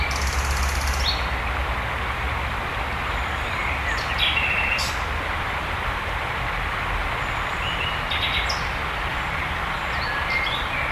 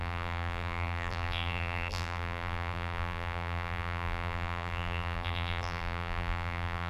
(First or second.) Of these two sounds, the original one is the first